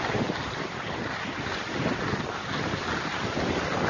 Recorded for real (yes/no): yes